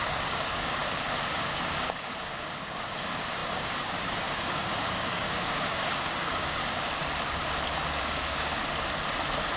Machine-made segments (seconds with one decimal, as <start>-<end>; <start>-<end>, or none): 0.0-0.8; 1.3-6.6; 8.0-8.5